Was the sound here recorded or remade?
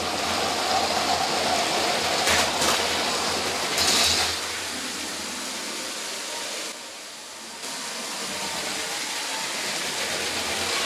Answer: recorded